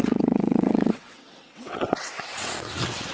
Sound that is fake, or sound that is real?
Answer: fake